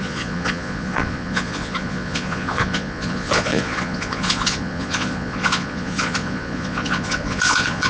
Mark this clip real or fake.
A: fake